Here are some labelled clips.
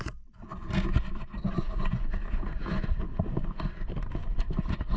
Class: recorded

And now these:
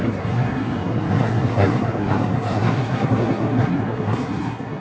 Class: remade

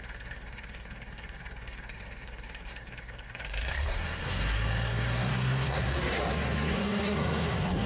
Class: remade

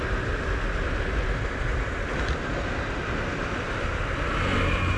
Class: recorded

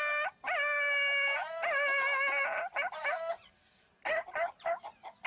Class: recorded